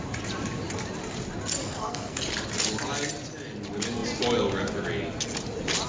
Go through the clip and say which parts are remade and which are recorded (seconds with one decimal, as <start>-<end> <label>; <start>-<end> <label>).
0.0-1.6 recorded; 1.6-2.2 remade; 2.2-5.9 recorded